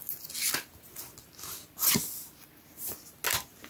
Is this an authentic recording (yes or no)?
yes